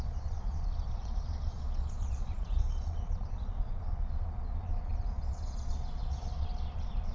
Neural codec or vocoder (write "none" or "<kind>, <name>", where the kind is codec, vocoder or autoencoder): vocoder, Vocos